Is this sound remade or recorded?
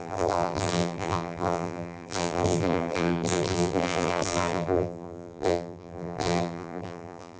remade